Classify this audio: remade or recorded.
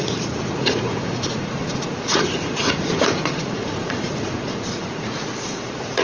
remade